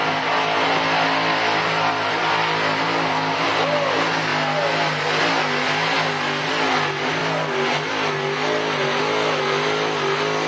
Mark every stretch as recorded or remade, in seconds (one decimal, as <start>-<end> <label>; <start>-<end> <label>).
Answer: 0.0-8.4 recorded; 8.4-9.0 remade; 9.0-10.5 recorded